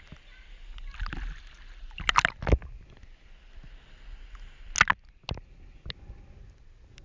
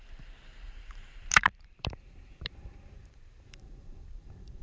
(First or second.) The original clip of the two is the first